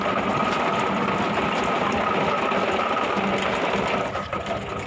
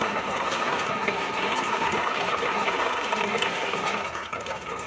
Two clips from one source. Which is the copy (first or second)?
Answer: second